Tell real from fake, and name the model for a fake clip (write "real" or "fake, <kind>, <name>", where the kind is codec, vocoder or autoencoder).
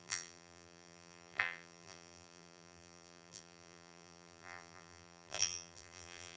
fake, vocoder, BigVGAN v2